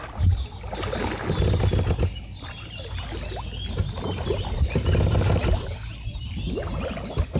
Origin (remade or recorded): recorded